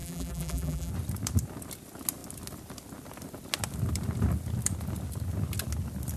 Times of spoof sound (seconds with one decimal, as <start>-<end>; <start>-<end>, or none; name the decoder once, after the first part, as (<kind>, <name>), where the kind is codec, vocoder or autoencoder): 0.0-0.9 (vocoder, BigVGAN v2)